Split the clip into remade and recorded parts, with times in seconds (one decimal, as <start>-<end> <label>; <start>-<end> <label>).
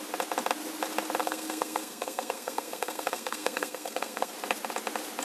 0.0-1.2 recorded; 1.2-4.3 remade; 4.3-5.2 recorded